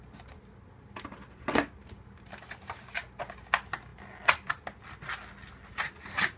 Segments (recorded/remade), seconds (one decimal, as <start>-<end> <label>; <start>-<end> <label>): 0.0-6.4 recorded